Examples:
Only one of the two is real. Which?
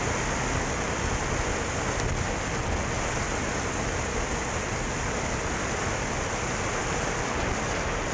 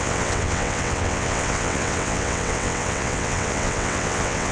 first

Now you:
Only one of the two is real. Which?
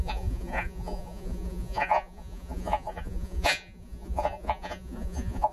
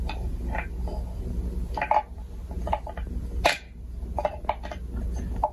second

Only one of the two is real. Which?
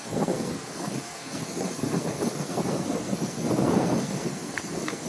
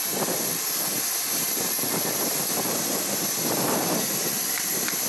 second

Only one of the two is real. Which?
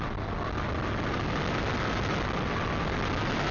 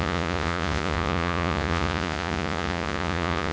first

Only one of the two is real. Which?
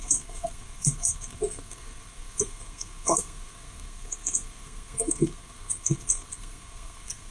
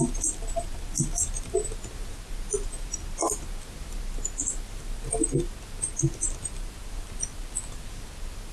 second